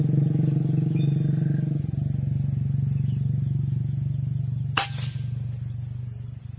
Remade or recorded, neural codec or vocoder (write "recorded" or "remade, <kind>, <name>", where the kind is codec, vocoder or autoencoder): recorded